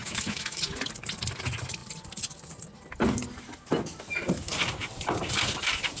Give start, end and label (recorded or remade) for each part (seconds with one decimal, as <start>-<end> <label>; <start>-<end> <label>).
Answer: 0.0-0.6 remade; 0.6-6.0 recorded